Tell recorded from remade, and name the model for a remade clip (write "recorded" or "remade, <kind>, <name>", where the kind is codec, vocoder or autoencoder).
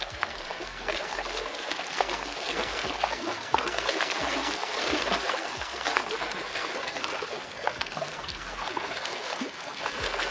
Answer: remade, codec, SNAC